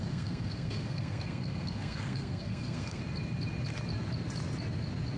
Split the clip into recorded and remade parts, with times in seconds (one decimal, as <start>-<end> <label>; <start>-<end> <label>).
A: 0.0-3.0 remade; 3.0-5.2 recorded